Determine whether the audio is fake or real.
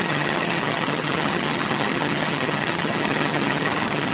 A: fake